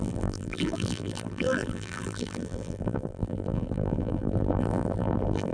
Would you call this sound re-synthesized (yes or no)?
yes